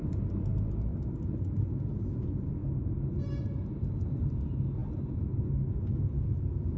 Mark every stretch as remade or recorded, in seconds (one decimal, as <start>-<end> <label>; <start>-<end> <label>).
0.0-0.9 remade; 0.9-2.1 recorded; 2.1-2.6 remade; 2.6-4.0 recorded; 4.0-4.8 remade; 4.8-6.8 recorded